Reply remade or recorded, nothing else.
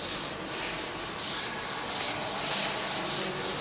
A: recorded